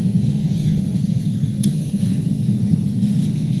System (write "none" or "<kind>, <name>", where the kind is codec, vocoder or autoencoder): codec, SNAC